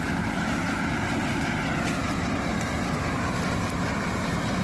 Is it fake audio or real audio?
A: fake